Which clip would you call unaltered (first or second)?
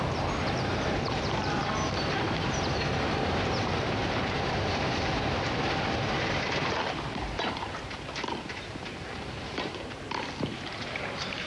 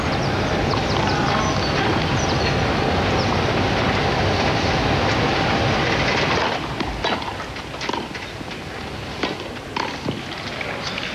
second